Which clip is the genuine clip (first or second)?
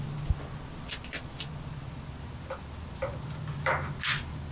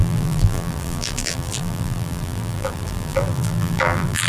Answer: first